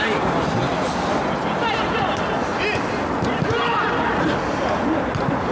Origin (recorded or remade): recorded